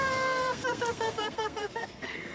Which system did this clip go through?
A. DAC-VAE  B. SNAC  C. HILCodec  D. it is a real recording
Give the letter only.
B